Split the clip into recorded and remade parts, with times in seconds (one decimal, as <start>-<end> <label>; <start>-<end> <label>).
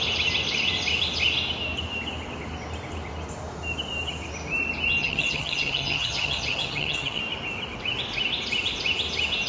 0.0-5.0 recorded; 5.0-7.2 remade; 7.2-9.5 recorded